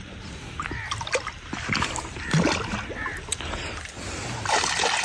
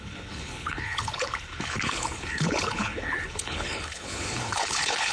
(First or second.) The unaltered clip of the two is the first